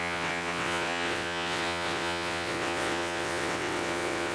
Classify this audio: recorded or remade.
remade